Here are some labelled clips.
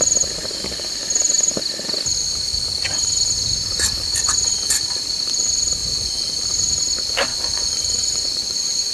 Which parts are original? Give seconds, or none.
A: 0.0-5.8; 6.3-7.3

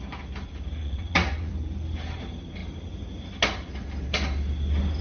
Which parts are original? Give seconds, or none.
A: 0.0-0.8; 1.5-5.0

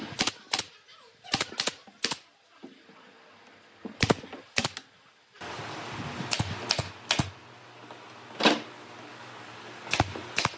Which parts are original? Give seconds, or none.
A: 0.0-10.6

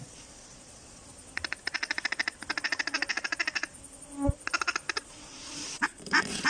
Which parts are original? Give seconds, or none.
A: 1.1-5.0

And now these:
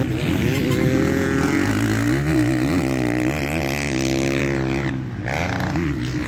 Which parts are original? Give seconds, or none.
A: 0.0-6.3

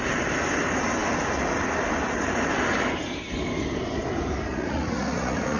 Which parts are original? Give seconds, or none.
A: 0.0-4.5

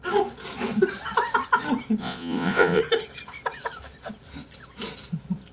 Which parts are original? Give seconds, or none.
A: 0.0-2.0; 2.8-5.5